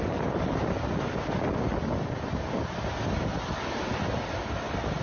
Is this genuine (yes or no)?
yes